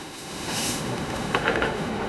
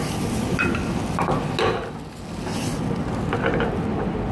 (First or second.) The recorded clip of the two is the second